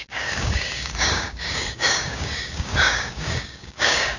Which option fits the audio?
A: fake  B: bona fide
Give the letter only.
A